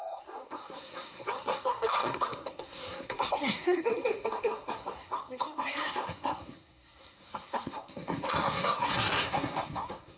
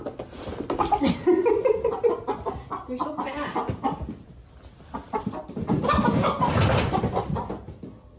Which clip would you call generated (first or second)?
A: first